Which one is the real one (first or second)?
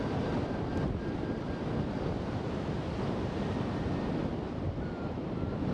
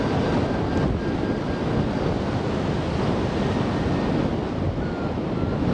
second